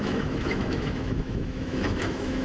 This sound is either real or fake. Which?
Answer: fake